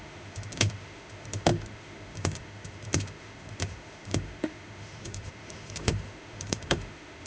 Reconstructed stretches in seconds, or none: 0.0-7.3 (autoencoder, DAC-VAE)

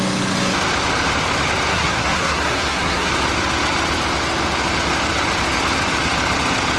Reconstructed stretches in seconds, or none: 1.7-3.1 (codec, SNAC)

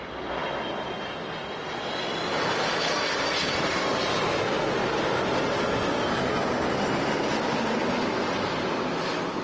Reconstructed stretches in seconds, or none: none

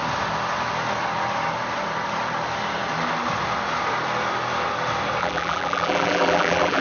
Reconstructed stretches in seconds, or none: 5.2-6.8 (vocoder, BigVGAN v2)

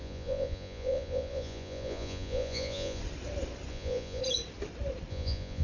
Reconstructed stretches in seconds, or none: 0.0-3.0 (vocoder, Vocos); 3.7-4.2; 5.1-5.6

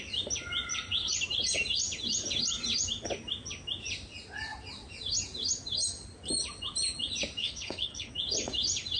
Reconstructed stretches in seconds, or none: 7.4-8.1 (codec, HILCodec)